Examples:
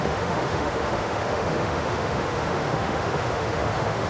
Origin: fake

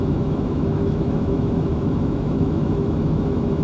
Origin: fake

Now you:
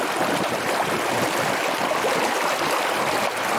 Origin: real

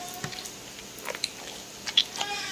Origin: real